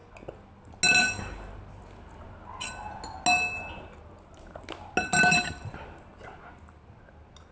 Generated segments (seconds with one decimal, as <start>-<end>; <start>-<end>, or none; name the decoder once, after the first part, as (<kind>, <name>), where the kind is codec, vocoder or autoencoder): none